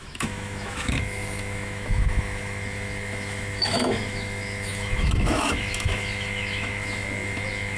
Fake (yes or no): yes